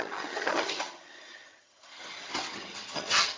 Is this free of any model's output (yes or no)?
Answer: no